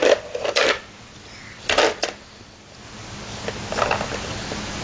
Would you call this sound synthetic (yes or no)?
no